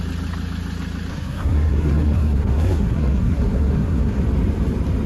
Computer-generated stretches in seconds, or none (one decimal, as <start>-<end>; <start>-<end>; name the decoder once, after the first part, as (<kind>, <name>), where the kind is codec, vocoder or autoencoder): 1.1-4.2 (codec, SNAC)